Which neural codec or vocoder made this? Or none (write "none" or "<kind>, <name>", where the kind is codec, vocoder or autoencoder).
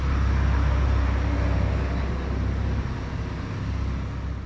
none